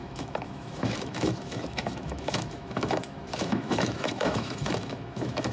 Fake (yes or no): yes